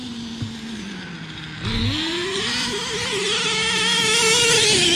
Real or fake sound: real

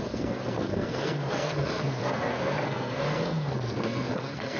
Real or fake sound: fake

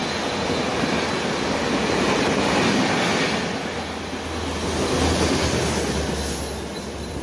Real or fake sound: real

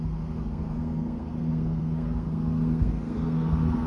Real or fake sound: fake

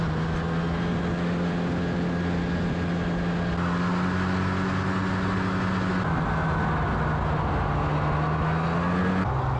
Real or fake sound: real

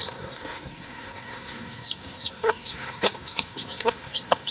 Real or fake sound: fake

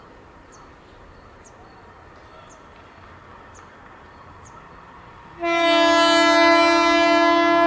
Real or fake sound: real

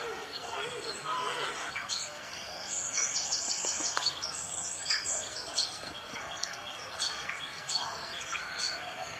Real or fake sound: fake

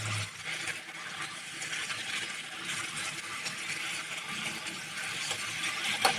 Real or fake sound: real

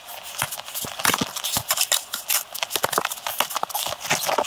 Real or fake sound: real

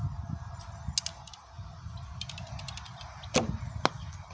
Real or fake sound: real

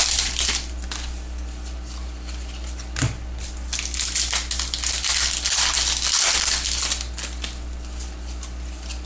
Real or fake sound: real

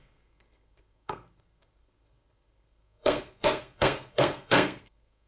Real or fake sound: fake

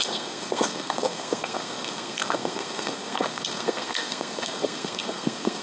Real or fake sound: fake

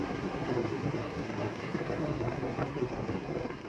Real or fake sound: fake